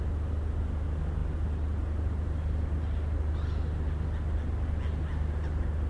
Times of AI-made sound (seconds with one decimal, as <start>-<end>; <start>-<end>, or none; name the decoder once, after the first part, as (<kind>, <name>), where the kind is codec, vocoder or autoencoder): none